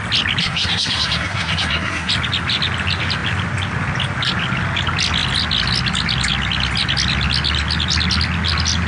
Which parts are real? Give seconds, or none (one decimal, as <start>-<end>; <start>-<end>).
0.0-0.4; 2.1-8.9